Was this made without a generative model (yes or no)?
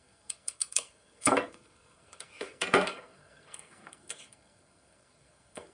no